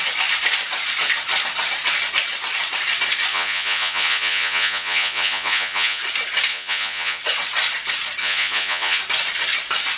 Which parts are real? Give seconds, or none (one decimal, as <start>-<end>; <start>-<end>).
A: 0.0-3.3; 6.0-6.5; 7.2-8.2; 9.0-10.0